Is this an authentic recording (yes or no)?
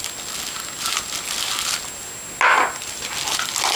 yes